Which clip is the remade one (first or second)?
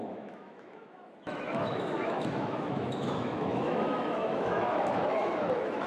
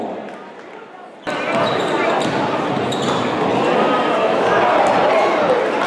first